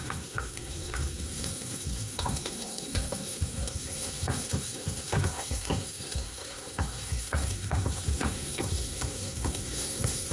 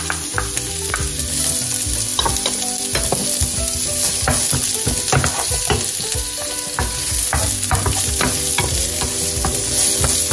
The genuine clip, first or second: second